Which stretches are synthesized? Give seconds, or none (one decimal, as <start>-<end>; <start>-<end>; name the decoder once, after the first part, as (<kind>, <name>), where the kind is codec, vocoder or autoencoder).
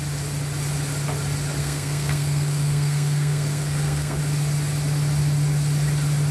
1.6-4.2 (codec, SNAC)